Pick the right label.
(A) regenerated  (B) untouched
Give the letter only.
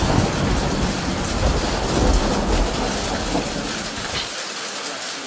B